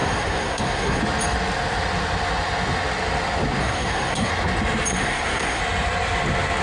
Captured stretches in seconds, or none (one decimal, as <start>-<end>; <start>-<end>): 1.0-3.6; 4.3-5.0; 5.6-6.6